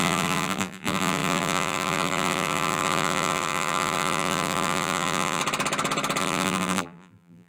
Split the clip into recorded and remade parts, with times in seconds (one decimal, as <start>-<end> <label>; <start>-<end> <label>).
0.0-5.4 remade; 5.4-6.2 recorded; 6.2-7.5 remade